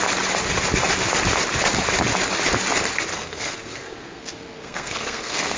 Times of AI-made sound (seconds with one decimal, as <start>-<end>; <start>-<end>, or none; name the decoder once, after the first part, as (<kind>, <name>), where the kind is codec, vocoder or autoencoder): 3.1-5.6 (codec, SNAC)